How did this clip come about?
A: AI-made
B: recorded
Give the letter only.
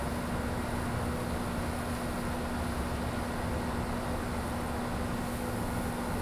B